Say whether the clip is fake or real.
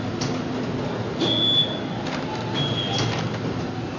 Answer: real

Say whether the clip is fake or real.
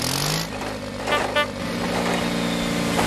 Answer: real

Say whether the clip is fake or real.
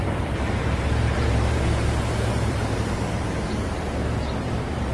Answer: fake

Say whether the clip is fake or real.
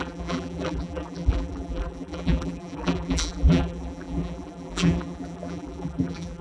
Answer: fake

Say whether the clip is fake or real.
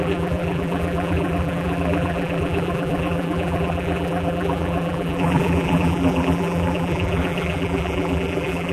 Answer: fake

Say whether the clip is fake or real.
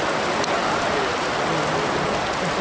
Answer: real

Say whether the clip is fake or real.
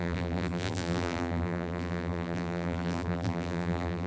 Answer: fake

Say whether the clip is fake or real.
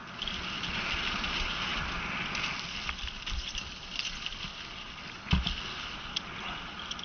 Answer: real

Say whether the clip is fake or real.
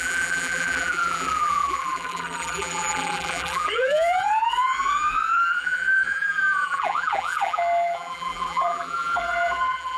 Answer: fake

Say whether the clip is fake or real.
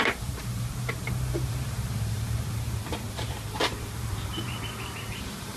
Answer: fake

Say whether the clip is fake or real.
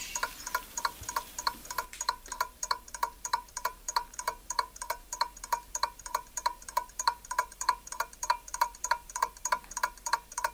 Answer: fake